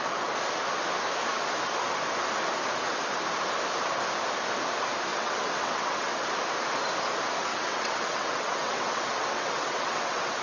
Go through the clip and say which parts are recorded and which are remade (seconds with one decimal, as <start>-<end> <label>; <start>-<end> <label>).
0.0-5.1 recorded; 5.1-6.2 remade; 6.2-7.5 recorded; 7.5-10.4 remade